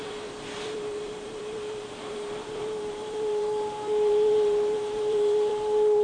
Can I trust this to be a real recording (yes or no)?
no